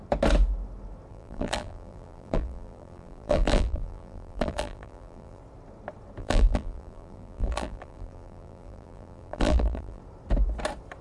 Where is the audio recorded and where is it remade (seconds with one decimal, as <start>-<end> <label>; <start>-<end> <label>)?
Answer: 0.0-1.1 recorded; 1.1-5.4 remade; 5.4-6.2 recorded; 6.2-10.0 remade; 10.0-11.0 recorded